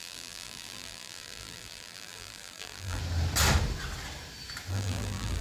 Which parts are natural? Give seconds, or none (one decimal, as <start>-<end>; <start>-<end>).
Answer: 3.0-4.7